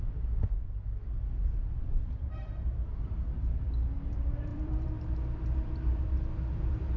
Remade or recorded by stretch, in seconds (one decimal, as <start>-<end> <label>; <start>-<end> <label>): 0.0-1.4 recorded; 1.4-3.1 remade; 3.1-4.5 recorded; 4.5-7.0 remade